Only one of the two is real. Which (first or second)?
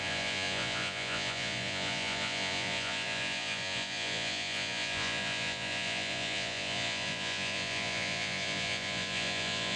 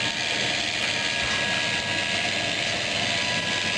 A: second